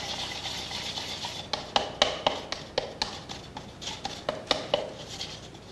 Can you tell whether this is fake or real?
real